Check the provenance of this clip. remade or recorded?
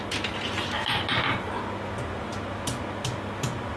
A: recorded